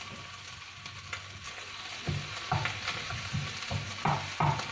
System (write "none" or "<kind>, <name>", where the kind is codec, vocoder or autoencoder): none